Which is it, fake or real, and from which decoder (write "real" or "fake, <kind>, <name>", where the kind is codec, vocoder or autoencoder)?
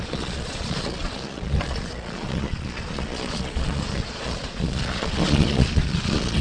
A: fake, vocoder, Vocos